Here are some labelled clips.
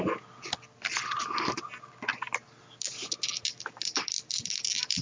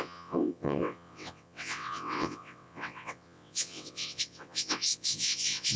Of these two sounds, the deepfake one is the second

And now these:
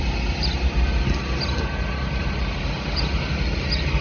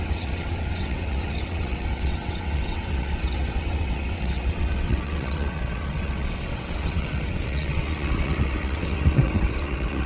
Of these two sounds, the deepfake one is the second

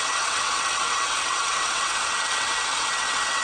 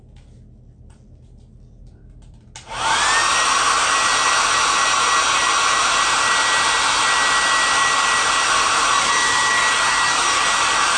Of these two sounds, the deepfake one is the first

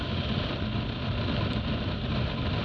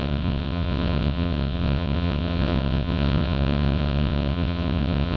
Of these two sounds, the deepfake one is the second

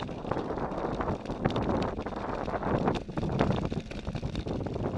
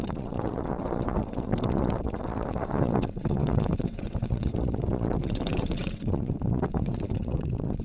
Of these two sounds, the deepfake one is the second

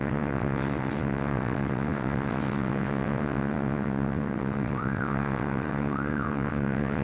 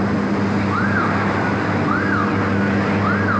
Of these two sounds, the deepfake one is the first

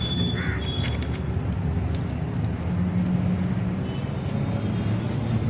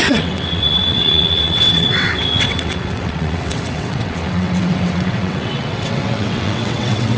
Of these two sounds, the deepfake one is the second